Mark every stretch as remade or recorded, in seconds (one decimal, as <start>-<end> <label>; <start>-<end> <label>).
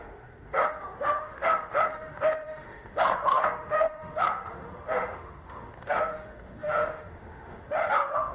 0.0-8.3 remade